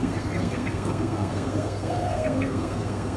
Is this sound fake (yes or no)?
yes